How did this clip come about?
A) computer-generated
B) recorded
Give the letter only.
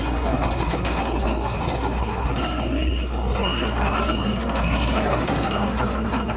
A